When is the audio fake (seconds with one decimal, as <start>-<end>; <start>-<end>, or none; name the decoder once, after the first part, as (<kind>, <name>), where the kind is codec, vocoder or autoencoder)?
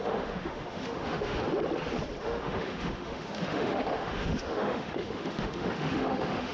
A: 0.0-1.4 (autoencoder, DAC-VAE); 2.2-6.5